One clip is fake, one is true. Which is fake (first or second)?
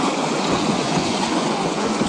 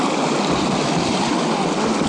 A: first